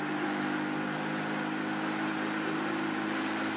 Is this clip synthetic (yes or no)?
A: no